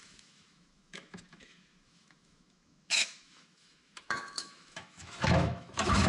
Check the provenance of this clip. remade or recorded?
remade